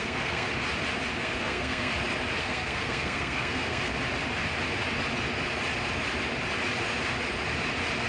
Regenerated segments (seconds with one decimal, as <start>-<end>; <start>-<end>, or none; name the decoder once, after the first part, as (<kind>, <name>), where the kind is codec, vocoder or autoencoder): 0.0-0.5 (codec, SNAC); 1.2-1.9; 2.4-3.9